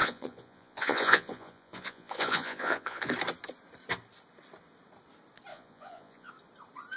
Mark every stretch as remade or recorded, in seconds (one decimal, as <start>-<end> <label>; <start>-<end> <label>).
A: 0.0-3.1 remade; 3.1-5.5 recorded; 5.5-6.3 remade; 6.3-7.0 recorded